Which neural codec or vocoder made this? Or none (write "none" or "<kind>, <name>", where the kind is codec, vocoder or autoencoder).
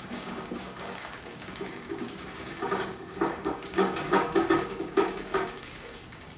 codec, DAC